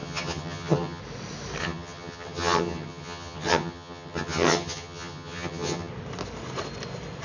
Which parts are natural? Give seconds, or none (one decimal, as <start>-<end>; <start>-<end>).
1.0-1.6; 5.9-7.2